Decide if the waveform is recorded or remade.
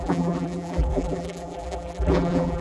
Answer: remade